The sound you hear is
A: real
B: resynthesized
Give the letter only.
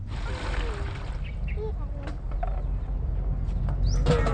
A